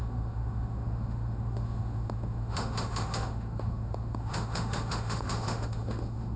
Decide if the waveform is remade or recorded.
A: remade